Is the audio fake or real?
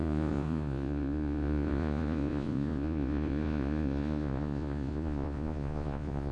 fake